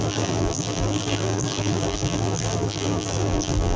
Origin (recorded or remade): remade